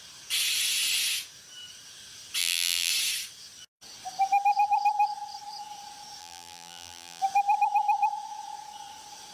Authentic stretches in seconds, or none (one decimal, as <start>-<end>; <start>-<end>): 0.0-2.4; 2.9-6.2; 7.2-9.3